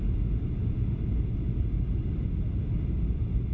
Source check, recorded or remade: recorded